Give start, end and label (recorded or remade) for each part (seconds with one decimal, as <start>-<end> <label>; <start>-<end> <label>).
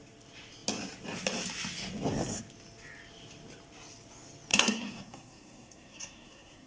0.0-4.5 recorded; 4.5-6.7 remade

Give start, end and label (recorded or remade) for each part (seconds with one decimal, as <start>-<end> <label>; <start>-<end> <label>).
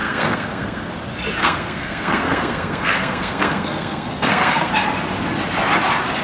0.0-0.9 remade; 0.9-1.4 recorded; 1.4-4.7 remade; 4.7-6.2 recorded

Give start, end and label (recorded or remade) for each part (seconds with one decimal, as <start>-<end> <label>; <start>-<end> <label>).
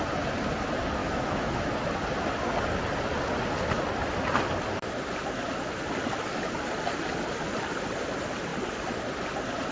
0.0-1.0 recorded; 1.0-1.7 remade; 1.7-9.7 recorded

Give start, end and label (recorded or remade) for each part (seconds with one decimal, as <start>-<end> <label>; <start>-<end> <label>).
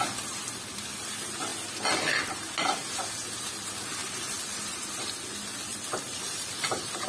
0.0-4.0 recorded; 4.0-5.1 remade; 5.1-6.1 recorded; 6.1-7.1 remade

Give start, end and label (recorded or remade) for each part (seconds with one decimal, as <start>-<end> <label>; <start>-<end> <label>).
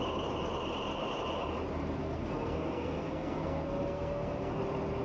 0.0-2.0 recorded; 2.0-4.6 remade; 4.6-5.0 recorded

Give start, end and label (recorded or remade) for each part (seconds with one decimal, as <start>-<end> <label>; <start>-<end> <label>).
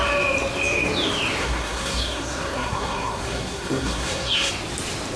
0.0-1.4 recorded; 1.4-4.5 remade; 4.5-5.2 recorded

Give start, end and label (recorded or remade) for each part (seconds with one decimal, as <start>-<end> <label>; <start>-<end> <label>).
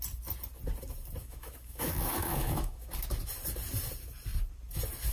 0.0-1.2 recorded; 1.2-2.9 remade; 2.9-5.1 recorded